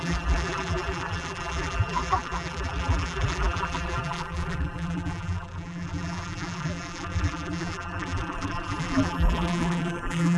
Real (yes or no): no